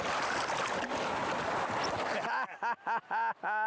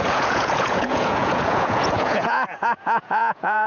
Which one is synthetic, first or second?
second